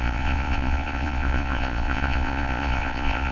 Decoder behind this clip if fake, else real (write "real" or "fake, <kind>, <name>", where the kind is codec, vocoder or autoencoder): fake, vocoder, Vocos